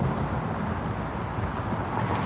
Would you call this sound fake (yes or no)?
no